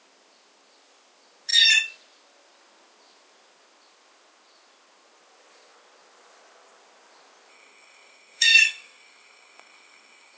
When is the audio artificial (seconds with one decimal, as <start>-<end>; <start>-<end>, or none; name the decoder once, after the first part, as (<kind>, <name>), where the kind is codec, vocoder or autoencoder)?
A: 7.5-10.4 (codec, SNAC)